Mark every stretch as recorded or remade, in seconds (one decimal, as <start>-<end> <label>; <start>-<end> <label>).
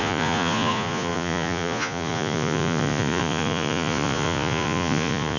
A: 0.0-5.4 remade